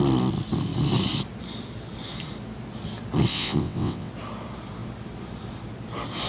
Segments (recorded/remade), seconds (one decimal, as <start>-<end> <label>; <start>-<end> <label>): 0.0-3.3 recorded; 3.3-4.1 remade; 4.1-6.3 recorded